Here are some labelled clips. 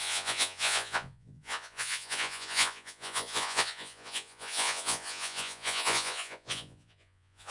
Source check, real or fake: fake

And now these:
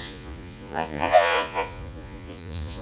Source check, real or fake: fake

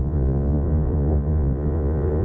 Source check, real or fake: fake